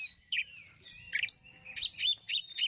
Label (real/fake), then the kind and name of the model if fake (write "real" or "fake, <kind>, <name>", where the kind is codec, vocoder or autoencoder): real